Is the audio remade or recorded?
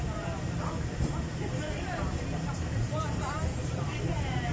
remade